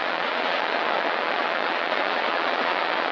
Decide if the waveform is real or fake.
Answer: fake